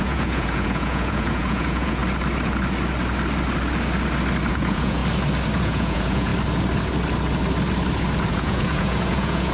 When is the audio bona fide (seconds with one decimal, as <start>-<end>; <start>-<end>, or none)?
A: 2.0-4.5; 5.0-5.6; 6.3-8.3